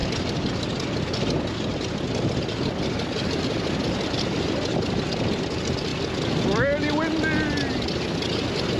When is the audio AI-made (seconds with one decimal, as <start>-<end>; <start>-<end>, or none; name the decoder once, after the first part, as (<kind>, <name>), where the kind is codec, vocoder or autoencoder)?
none